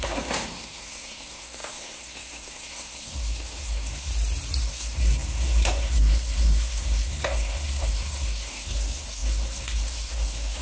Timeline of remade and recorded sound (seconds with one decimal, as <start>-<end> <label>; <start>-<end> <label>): 0.0-4.1 remade; 4.1-4.6 recorded; 4.6-10.6 remade